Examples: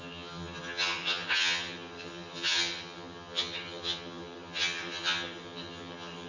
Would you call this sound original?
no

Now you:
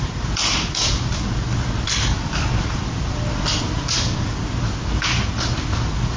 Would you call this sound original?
yes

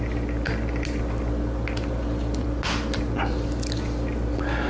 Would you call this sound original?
yes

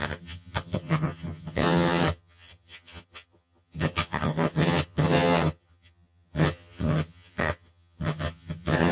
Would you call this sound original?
no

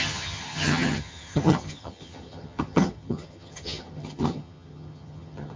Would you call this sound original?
no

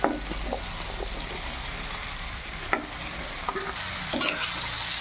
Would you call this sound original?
yes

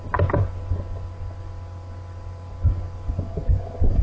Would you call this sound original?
yes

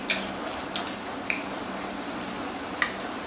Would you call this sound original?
yes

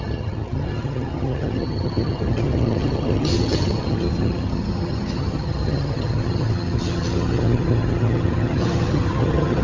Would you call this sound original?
no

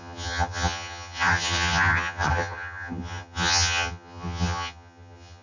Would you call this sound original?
no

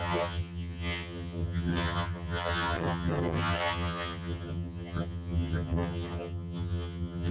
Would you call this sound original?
no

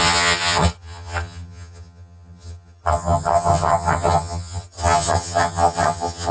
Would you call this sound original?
no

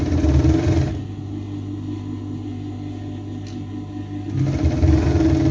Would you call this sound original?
yes